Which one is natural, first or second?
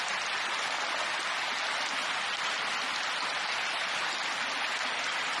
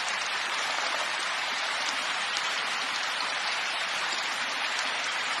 first